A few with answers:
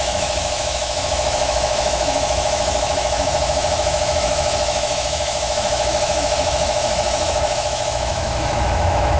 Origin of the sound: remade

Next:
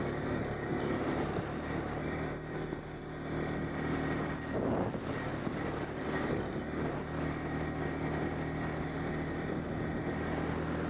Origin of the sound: recorded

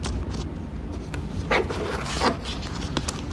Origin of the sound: recorded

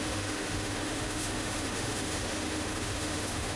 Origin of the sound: remade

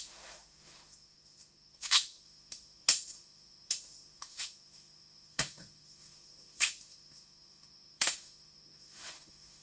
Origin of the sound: remade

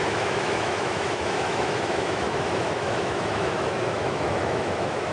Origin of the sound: remade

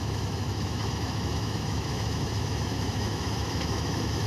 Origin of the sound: remade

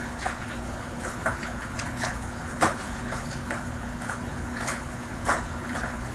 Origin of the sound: remade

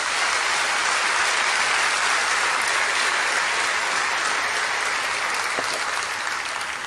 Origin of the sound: recorded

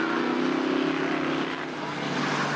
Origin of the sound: recorded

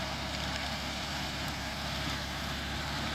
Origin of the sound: remade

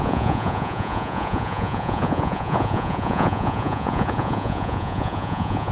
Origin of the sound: remade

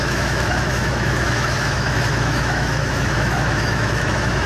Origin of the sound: remade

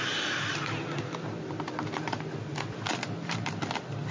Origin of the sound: recorded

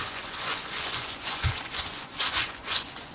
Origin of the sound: remade